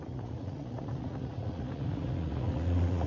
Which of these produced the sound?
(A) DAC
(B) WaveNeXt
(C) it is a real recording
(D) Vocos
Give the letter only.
D